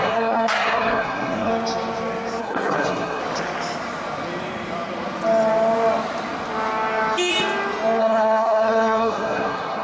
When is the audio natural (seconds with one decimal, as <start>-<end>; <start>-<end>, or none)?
1.5-2.4; 3.2-8.0